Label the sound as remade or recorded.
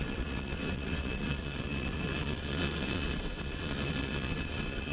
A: remade